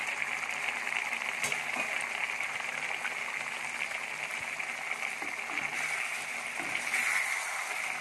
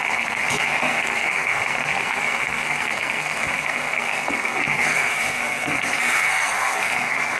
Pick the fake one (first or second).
second